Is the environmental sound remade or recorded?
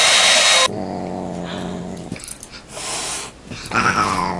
recorded